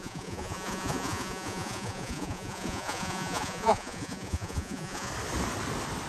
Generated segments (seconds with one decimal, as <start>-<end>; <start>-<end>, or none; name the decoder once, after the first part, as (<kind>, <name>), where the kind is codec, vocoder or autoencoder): 0.0-5.1 (vocoder, Vocos)